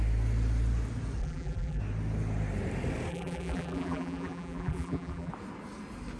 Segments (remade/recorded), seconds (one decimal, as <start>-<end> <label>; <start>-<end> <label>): 0.0-1.2 recorded; 1.2-1.8 remade; 1.8-3.1 recorded; 3.1-5.3 remade; 5.3-6.2 recorded